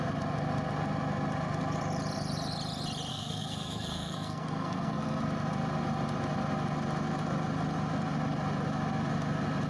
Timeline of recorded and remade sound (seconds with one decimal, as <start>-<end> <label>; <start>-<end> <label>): 0.0-3.1 recorded; 3.1-5.2 remade; 5.2-9.7 recorded